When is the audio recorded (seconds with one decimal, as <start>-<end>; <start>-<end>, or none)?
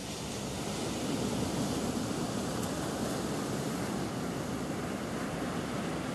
0.0-6.1